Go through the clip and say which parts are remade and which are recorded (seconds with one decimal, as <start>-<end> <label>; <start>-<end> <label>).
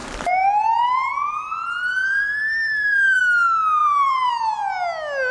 0.0-3.2 remade; 3.2-3.8 recorded; 3.8-4.3 remade; 4.3-5.3 recorded